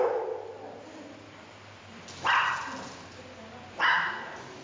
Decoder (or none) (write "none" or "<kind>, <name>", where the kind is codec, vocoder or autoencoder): none